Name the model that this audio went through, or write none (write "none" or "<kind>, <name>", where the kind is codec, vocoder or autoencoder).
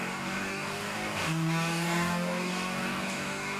codec, DAC